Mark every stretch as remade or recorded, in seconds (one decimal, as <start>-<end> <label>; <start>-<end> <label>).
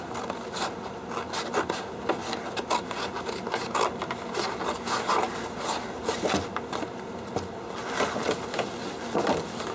0.0-9.7 recorded